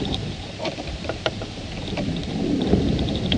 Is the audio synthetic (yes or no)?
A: yes